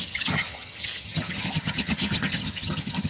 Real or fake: fake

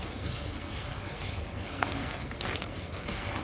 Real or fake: fake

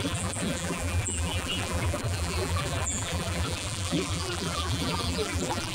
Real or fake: fake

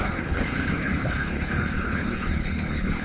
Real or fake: fake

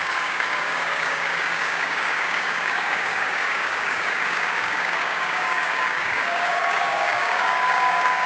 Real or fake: fake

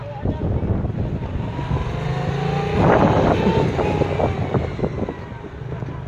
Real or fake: real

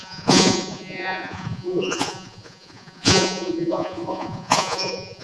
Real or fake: fake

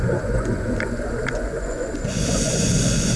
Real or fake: fake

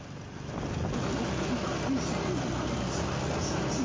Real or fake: real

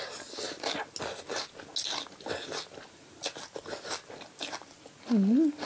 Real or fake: real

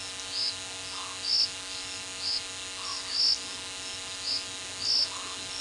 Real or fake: real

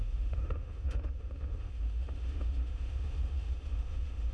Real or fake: fake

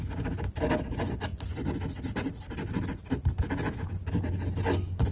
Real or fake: real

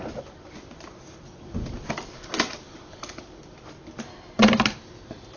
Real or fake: real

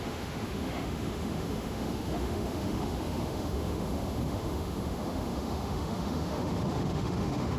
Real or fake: fake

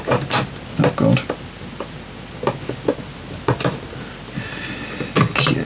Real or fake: real